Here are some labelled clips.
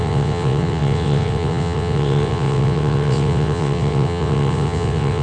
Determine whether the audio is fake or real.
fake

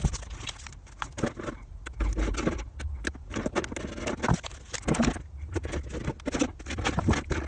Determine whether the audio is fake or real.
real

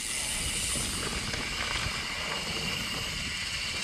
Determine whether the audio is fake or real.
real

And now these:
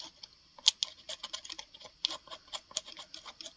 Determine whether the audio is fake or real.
real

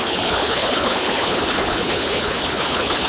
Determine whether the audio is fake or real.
fake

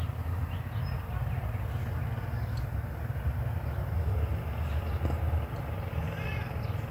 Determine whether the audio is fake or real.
real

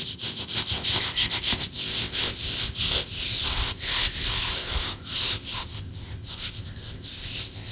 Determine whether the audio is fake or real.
fake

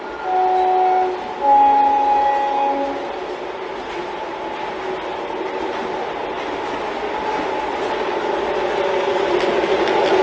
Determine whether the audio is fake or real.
real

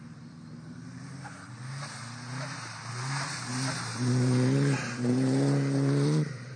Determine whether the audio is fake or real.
fake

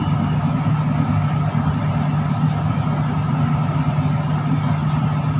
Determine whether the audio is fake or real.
real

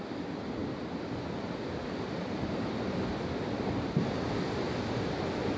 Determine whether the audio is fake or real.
real